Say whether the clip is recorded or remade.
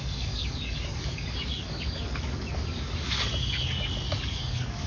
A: remade